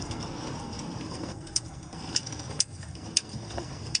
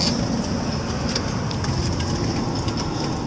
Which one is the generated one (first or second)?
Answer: first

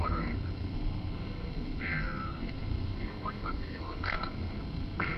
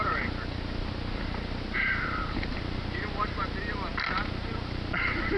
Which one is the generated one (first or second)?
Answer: first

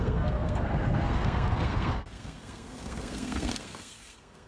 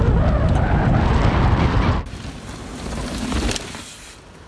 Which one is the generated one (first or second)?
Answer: first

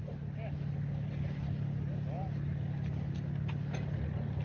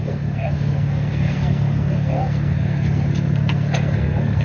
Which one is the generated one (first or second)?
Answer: second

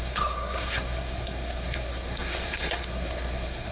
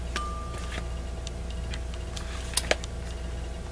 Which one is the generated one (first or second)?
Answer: first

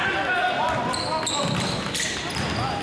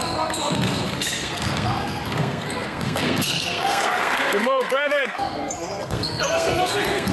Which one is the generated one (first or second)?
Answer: second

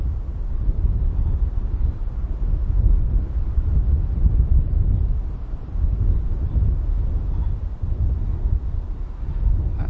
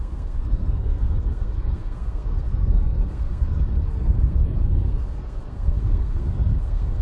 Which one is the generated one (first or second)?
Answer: second